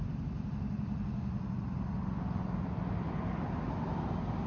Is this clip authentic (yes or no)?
yes